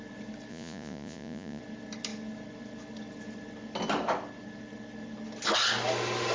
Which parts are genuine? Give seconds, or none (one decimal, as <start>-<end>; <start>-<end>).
0.0-0.5; 1.6-6.3